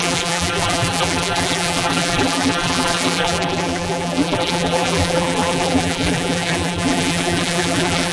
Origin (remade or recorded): remade